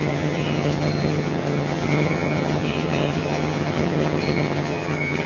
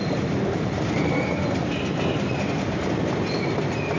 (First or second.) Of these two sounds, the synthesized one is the first